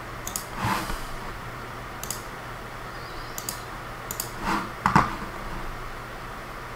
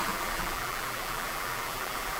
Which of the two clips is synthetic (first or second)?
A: second